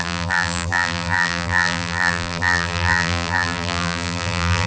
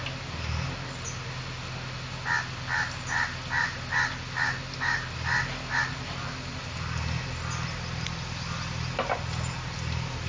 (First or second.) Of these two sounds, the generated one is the first